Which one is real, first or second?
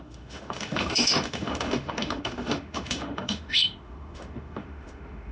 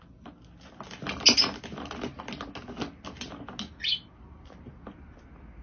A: second